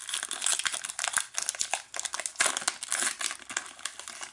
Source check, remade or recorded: recorded